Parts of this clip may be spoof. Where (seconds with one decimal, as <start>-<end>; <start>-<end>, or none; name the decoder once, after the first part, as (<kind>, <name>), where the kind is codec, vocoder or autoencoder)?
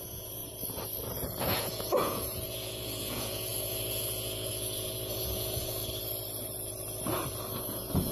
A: 0.0-0.4 (vocoder, Vocos); 1.4-5.8; 7.5-8.1